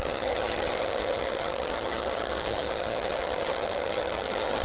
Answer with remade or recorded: remade